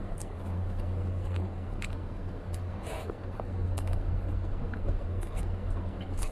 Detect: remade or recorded remade